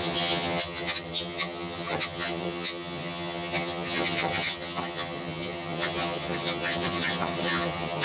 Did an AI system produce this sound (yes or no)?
yes